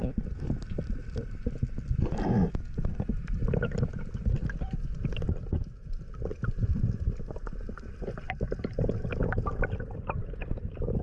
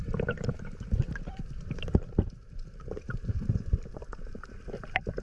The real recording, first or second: first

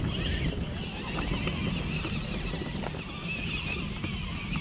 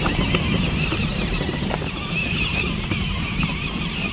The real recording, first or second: first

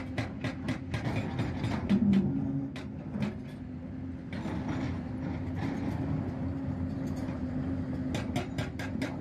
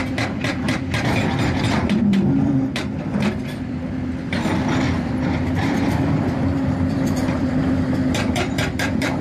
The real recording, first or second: first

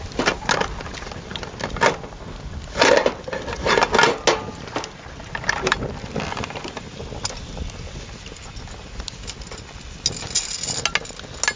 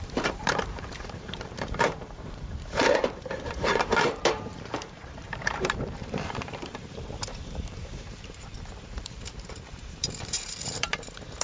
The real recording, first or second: first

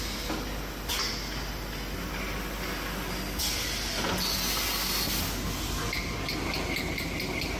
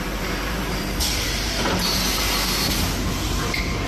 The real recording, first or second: first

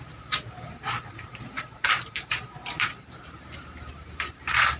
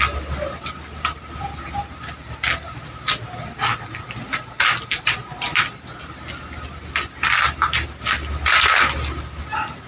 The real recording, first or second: second